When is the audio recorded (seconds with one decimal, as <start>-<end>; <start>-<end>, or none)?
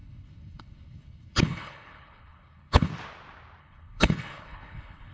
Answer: 2.9-3.6